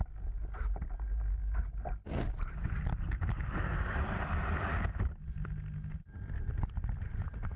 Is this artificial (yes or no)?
no